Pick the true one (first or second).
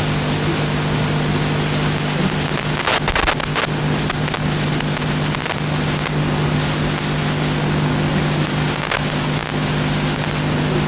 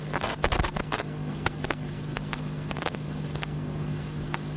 first